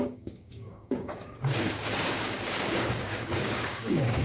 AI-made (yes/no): yes